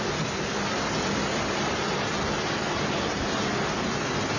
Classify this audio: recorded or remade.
recorded